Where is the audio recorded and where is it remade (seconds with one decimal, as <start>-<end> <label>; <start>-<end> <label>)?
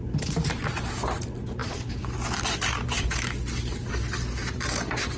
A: 0.0-5.2 recorded